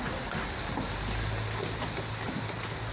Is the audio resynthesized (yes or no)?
no